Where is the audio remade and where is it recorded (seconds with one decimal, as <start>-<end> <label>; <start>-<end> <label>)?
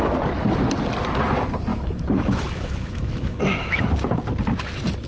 0.0-1.7 recorded; 1.7-3.8 remade; 3.8-5.1 recorded